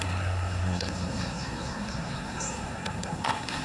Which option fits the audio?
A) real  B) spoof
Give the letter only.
B